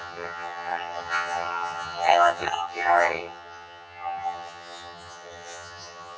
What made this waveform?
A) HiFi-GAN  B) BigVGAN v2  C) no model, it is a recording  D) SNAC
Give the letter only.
A